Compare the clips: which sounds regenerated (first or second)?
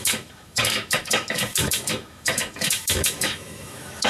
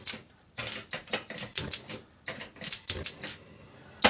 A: first